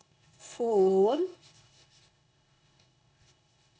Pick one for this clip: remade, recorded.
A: remade